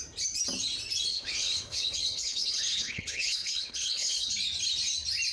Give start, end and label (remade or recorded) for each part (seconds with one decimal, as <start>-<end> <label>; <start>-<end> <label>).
0.0-1.1 recorded; 1.1-4.3 remade; 4.3-5.3 recorded